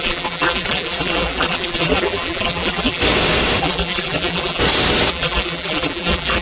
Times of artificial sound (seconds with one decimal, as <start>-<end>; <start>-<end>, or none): 0.0-3.0; 3.6-4.6; 5.1-6.4